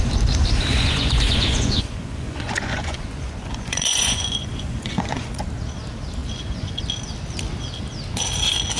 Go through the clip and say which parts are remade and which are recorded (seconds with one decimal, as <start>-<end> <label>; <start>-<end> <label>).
0.0-0.7 recorded; 0.7-5.4 remade; 5.4-6.2 recorded; 6.2-6.8 remade; 6.8-8.8 recorded